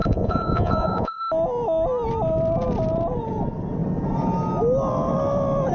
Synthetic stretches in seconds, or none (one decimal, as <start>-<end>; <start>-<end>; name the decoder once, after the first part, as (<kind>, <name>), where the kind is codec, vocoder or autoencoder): 0.0-1.2 (vocoder, Vocos)